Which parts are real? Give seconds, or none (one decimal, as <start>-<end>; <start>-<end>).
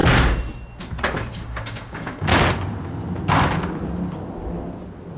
0.0-1.3; 2.3-5.2